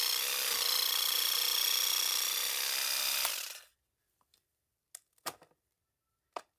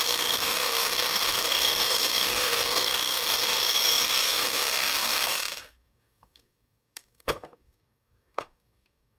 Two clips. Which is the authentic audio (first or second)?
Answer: first